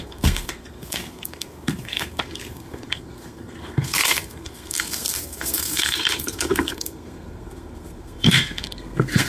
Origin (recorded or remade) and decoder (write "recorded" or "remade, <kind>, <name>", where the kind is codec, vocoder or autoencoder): remade, codec, SNAC